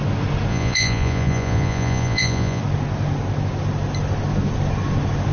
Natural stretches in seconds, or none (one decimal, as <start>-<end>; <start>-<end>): 0.0-0.5; 2.6-5.3